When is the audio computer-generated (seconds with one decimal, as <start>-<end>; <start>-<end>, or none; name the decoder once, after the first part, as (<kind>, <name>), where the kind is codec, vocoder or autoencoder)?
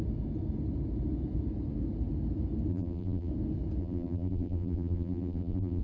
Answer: 2.7-3.3 (vocoder, BigVGAN v2); 3.8-5.8